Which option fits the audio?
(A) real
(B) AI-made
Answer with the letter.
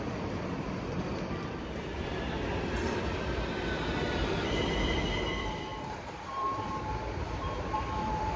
B